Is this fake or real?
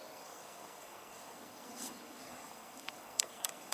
fake